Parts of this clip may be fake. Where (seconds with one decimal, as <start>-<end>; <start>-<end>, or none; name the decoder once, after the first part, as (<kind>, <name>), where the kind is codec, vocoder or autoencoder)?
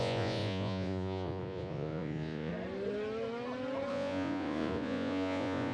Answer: 0.0-2.5 (vocoder, Vocos); 3.9-5.7